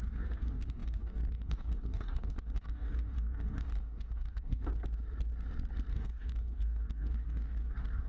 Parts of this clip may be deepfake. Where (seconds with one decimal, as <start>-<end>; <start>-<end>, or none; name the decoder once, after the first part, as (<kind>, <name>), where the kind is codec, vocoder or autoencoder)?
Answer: 0.0-4.7 (codec, DAC); 5.9-8.1